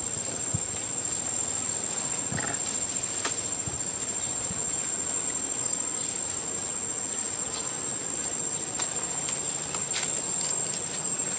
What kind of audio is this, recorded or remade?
recorded